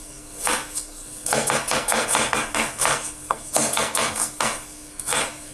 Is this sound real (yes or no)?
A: no